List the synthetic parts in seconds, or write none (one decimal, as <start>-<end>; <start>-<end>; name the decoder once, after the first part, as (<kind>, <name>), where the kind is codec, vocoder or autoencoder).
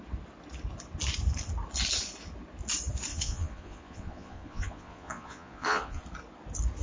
3.1-6.0 (vocoder, Vocos)